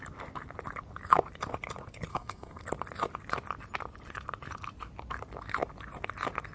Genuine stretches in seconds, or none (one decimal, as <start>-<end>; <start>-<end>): 0.0-2.1; 2.6-6.5